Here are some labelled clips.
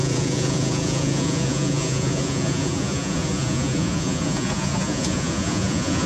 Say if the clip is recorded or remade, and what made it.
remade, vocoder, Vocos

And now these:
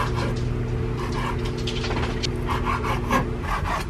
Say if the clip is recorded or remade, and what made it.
recorded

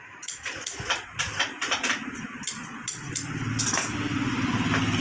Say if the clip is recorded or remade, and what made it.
recorded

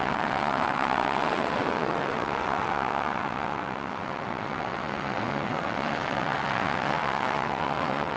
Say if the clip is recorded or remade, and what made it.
remade, vocoder, WaveNeXt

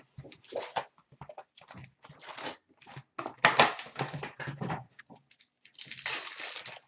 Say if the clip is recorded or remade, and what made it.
recorded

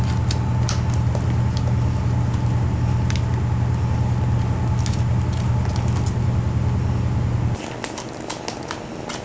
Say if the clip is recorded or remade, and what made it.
recorded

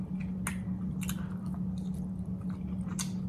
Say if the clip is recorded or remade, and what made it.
recorded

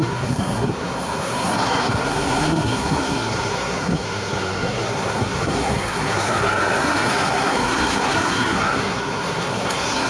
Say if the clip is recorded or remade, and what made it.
remade, codec, SNAC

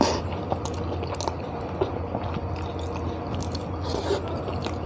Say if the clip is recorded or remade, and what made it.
recorded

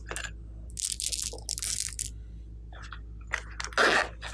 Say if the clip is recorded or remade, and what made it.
recorded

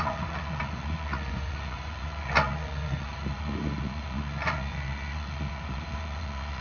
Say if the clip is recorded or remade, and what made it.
remade, vocoder, Vocos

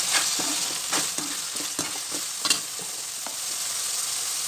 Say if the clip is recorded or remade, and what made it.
recorded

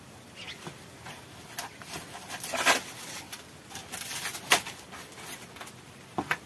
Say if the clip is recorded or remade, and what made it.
recorded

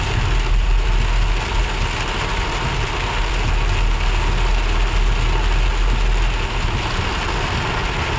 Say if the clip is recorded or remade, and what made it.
recorded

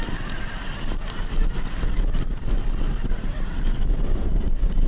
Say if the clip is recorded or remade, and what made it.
recorded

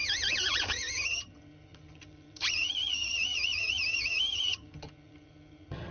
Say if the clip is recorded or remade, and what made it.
remade, vocoder, HiFi-GAN